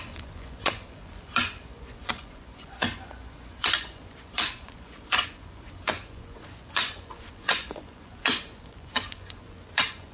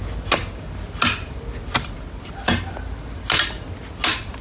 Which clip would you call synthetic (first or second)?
first